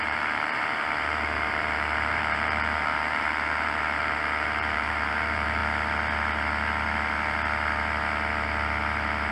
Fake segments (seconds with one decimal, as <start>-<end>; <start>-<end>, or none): 0.0-5.6